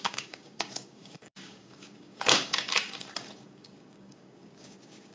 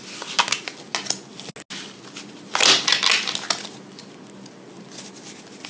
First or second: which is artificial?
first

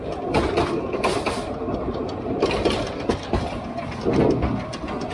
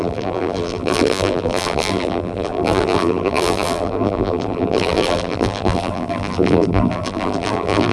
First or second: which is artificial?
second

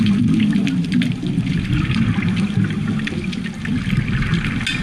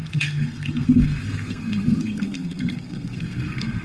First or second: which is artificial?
second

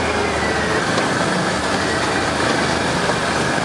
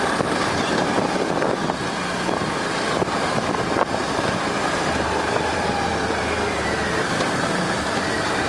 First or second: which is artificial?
second